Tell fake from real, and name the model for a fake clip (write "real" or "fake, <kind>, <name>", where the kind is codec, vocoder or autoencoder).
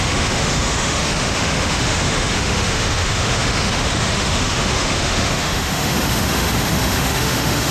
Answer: fake, autoencoder, DAC-VAE